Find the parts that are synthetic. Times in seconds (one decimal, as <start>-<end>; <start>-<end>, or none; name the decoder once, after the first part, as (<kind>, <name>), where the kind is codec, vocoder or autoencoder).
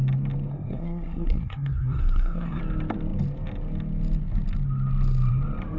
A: 0.5-2.6 (codec, SNAC)